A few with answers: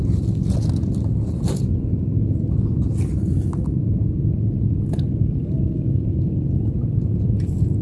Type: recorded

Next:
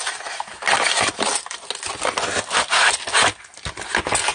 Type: recorded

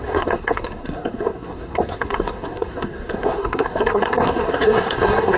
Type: remade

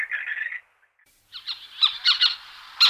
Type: recorded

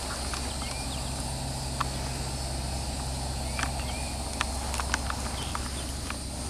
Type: recorded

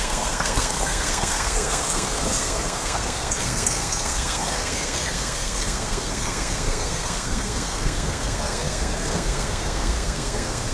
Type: remade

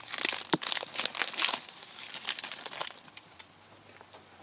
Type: recorded